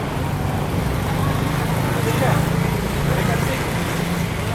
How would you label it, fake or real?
real